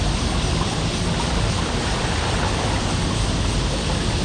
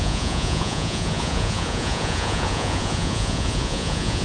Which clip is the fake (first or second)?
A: second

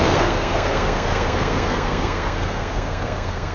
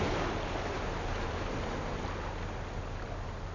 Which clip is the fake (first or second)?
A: first